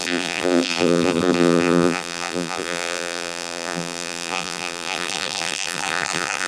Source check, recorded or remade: remade